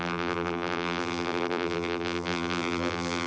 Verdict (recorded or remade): remade